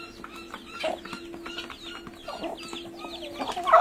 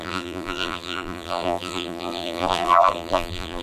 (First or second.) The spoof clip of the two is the second